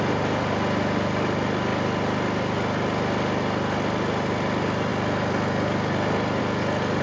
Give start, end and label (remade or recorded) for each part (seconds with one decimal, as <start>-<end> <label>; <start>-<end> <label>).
0.0-7.0 recorded